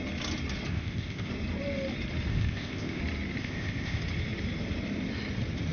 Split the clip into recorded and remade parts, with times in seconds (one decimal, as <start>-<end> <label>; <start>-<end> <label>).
0.0-0.7 recorded; 0.7-1.3 remade; 1.3-2.3 recorded; 2.3-3.0 remade; 3.0-3.4 recorded; 3.4-4.0 remade; 4.0-5.7 recorded